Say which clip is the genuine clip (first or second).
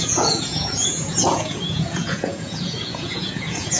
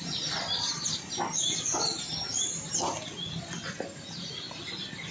second